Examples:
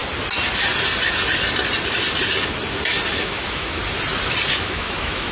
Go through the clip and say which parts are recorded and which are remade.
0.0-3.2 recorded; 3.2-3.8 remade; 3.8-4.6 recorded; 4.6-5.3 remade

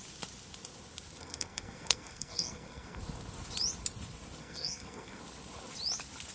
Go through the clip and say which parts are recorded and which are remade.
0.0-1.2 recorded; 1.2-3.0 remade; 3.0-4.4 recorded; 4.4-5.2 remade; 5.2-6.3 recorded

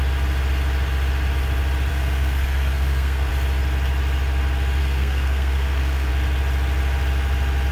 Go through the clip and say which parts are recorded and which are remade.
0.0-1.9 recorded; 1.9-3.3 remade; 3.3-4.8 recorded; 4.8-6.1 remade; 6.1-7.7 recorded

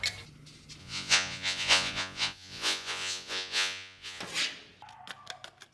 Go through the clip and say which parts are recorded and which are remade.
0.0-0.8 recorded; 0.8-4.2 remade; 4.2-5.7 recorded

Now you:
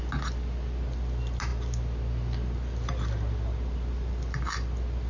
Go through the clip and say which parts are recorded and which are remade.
0.0-5.1 recorded

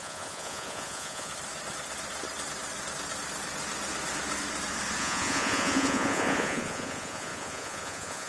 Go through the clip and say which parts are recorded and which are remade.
0.0-1.3 remade; 1.3-5.0 recorded; 5.0-8.3 remade

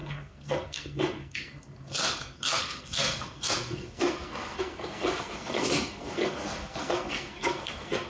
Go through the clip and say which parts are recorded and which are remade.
0.0-8.1 remade

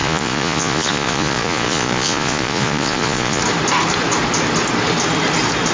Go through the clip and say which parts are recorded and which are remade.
0.0-3.4 remade; 3.4-5.7 recorded